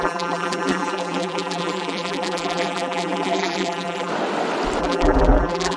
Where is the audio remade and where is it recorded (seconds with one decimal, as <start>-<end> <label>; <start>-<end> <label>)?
0.0-4.1 remade; 4.1-4.8 recorded; 4.8-5.8 remade